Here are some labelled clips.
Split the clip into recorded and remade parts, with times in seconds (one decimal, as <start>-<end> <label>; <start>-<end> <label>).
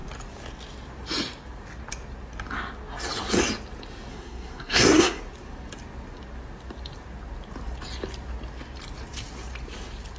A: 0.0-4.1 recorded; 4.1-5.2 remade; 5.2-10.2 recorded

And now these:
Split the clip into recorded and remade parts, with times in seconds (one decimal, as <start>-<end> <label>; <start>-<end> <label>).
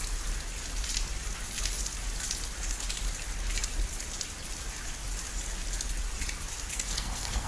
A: 0.0-6.7 recorded; 6.7-7.5 remade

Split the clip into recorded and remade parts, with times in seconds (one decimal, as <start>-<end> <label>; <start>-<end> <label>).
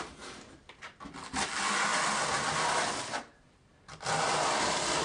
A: 0.0-5.0 recorded